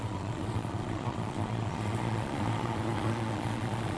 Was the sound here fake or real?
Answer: fake